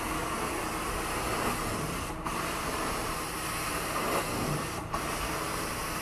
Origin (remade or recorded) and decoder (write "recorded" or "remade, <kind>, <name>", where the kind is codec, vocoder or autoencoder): recorded